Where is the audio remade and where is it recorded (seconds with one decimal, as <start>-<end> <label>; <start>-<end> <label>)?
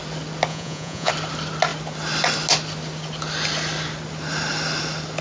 0.0-0.5 recorded; 0.5-1.1 remade; 1.1-5.2 recorded